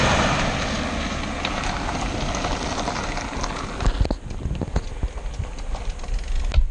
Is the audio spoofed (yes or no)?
no